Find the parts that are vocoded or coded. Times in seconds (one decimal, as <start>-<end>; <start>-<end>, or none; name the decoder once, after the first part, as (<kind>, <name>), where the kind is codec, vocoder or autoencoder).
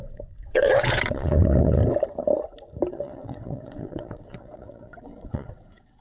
0.0-1.8 (vocoder, WaveNeXt); 2.9-6.0